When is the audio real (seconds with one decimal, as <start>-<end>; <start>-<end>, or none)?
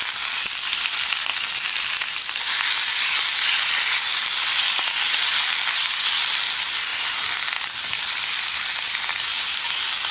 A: 1.3-5.4